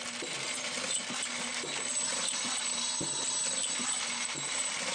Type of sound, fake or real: real